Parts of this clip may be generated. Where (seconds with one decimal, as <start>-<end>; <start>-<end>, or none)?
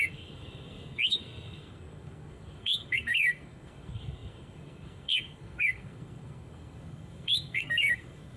0.0-8.4